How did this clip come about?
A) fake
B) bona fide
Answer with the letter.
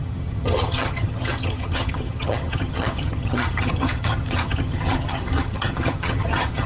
A